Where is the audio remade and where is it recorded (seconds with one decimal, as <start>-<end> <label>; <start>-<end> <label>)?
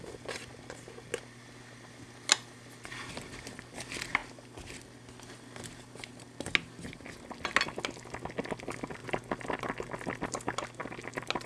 0.0-11.5 recorded